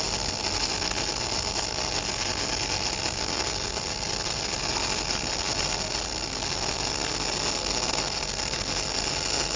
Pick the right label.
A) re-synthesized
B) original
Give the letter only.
B